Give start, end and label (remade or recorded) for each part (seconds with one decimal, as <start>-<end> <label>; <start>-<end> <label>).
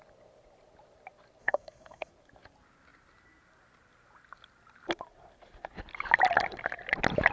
0.0-1.4 recorded; 1.4-2.1 remade; 2.1-7.3 recorded